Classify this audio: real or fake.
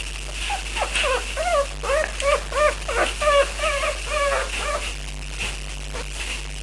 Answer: real